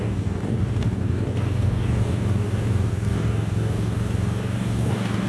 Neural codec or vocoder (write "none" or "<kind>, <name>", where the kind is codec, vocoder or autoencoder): codec, DAC